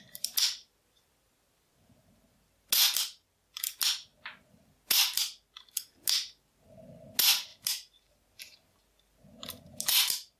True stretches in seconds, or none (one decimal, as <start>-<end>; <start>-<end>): 0.0-10.4